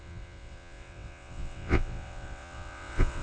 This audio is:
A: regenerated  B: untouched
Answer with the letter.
A